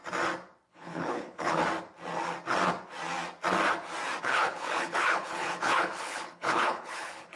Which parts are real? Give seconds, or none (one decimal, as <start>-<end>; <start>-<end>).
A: 0.0-0.7; 1.6-4.2